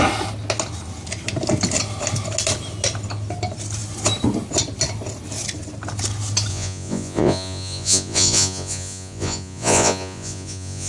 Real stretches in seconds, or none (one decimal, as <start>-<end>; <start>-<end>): 0.0-6.5